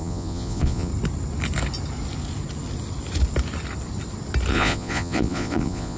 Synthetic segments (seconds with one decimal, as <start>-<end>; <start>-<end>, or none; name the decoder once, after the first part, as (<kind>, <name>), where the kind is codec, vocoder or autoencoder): 0.0-0.9 (vocoder, Vocos); 4.5-6.0